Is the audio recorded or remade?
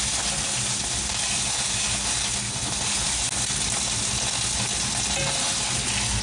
recorded